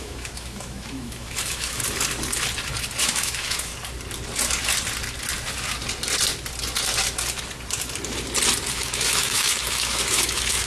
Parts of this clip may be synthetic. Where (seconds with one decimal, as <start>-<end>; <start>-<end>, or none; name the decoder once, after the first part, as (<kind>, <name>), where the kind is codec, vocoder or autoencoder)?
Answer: 0.0-1.8 (autoencoder, DAC-VAE); 3.0-3.7; 8.7-10.7